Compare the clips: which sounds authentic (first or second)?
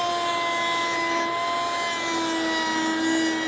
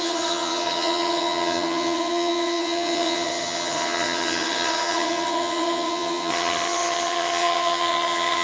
first